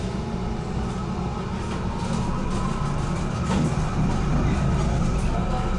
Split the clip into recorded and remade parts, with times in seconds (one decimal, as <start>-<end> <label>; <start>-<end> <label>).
0.0-5.8 recorded